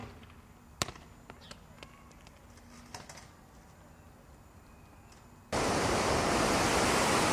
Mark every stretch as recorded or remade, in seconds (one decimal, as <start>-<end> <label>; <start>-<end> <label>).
0.0-7.3 recorded